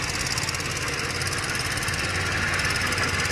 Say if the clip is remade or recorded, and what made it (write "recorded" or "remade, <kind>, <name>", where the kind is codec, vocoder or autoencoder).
recorded